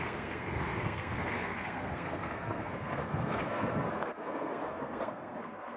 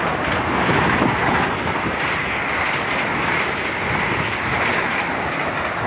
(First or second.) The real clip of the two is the second